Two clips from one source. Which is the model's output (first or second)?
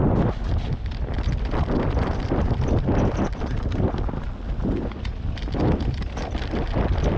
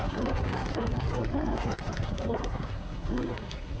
second